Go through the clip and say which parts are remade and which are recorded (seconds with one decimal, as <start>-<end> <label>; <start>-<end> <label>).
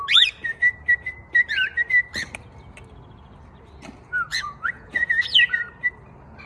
0.0-4.3 recorded; 4.3-5.6 remade; 5.6-6.5 recorded